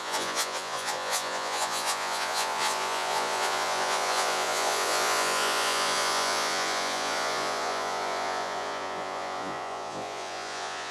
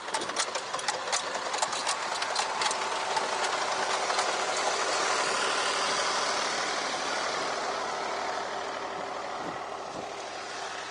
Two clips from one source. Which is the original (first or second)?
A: second